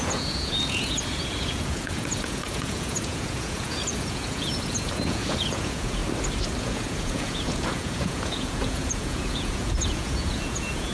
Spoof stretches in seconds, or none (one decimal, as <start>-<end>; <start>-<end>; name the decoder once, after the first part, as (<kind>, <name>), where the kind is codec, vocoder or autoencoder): 0.0-6.0 (vocoder, Vocos); 6.6-10.9